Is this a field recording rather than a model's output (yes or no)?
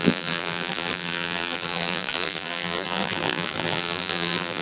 no